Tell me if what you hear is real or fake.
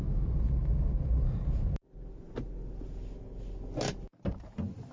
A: real